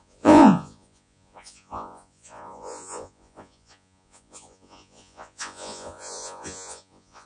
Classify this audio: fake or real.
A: fake